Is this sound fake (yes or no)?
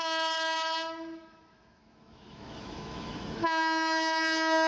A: yes